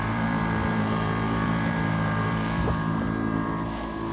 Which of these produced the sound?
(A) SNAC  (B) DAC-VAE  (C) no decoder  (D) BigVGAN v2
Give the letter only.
D